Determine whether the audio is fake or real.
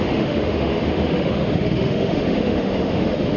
fake